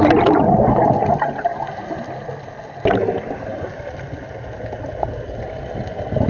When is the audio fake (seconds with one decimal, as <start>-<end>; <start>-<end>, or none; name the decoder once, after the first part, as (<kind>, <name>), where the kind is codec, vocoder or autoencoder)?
none